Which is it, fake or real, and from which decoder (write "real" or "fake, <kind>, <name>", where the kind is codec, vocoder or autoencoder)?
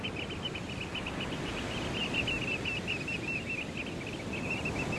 real